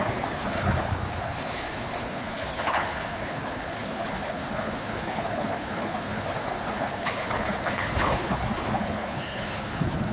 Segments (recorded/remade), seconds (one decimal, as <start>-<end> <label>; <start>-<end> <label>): 0.0-10.1 remade